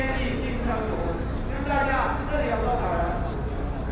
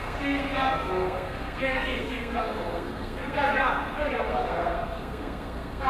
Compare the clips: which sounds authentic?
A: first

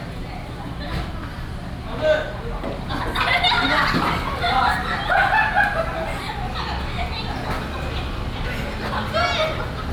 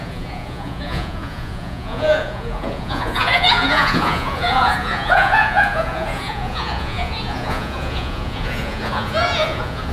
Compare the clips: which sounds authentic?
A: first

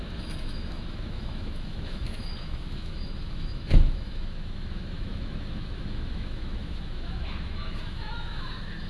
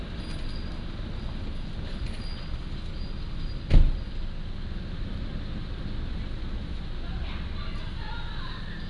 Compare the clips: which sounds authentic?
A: second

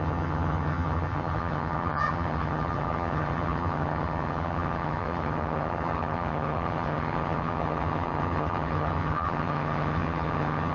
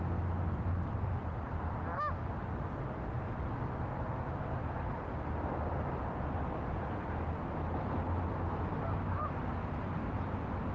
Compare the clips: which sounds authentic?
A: second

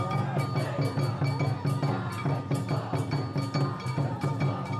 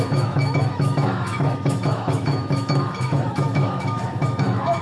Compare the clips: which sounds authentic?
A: first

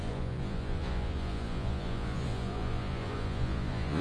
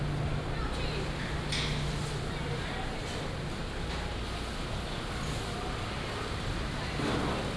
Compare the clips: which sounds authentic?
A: second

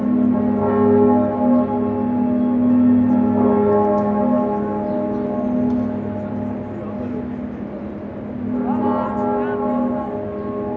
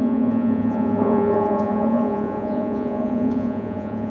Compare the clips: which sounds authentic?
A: first